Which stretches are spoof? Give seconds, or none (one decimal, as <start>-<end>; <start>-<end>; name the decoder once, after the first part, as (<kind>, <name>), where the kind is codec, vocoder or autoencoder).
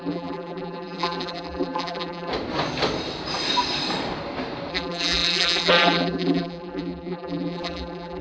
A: 0.0-2.3 (vocoder, BigVGAN v2); 4.7-8.2